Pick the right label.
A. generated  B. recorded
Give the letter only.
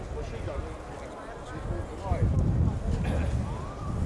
B